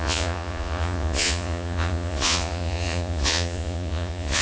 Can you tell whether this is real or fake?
fake